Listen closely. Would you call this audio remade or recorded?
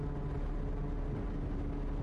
recorded